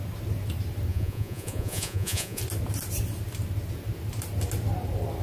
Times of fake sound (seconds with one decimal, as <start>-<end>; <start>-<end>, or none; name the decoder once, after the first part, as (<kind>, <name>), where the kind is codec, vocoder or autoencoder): 0.9-2.4 (vocoder, Vocos)